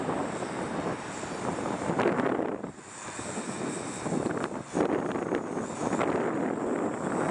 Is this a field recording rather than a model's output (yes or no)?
yes